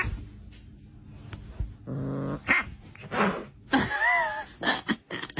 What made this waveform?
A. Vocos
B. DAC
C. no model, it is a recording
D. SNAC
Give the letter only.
C